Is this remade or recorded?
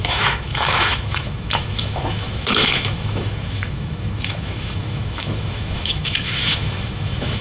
remade